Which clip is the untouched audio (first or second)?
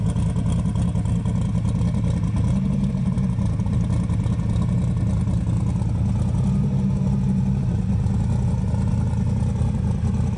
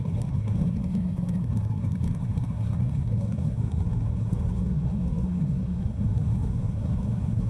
first